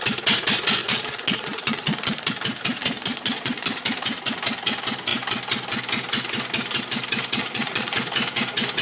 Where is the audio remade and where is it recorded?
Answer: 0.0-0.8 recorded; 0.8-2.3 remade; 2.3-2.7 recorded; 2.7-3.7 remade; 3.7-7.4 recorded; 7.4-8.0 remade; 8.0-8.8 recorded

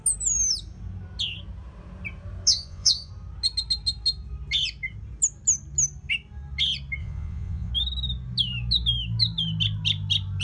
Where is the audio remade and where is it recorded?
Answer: 0.0-2.5 recorded; 2.5-3.1 remade; 3.1-7.0 recorded; 7.0-7.7 remade; 7.7-10.4 recorded

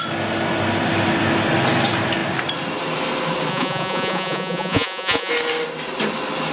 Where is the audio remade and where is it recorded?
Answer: 0.0-3.5 recorded; 3.5-5.3 remade; 5.3-6.5 recorded